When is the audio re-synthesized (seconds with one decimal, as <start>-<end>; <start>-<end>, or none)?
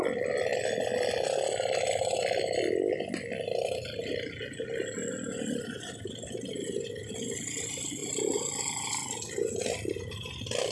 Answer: none